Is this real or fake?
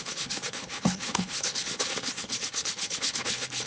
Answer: fake